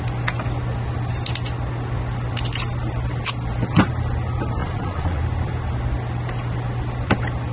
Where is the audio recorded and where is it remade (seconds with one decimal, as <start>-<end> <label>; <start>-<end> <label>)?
0.0-4.6 recorded; 4.6-5.2 remade; 5.2-7.5 recorded